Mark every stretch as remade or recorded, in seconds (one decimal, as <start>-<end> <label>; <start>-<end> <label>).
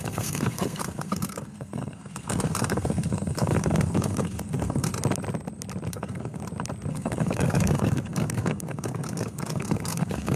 0.0-4.9 remade; 4.9-5.9 recorded; 5.9-6.4 remade; 6.4-6.9 recorded; 6.9-10.4 remade